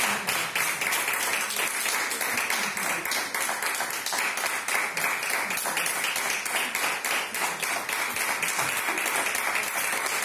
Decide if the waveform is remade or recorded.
recorded